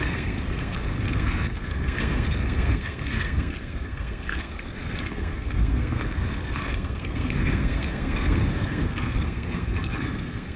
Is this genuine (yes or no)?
no